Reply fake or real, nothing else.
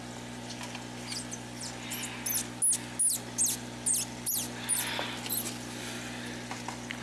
real